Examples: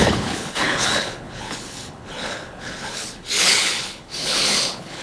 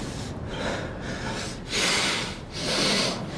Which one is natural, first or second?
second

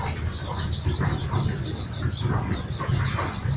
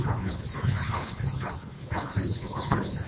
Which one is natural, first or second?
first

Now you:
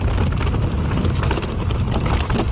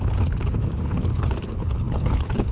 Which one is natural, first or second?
first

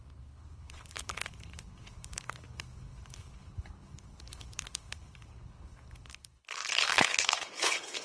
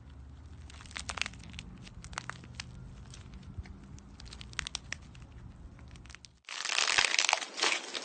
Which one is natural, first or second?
second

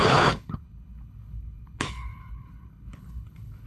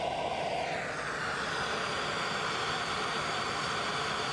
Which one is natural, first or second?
second